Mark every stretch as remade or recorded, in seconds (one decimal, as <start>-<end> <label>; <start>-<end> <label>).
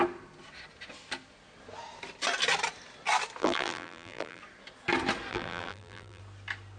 0.0-3.4 recorded; 3.4-4.4 remade; 4.4-5.3 recorded; 5.3-6.2 remade; 6.2-6.8 recorded